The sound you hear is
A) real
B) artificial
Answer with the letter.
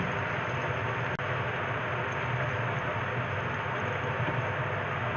A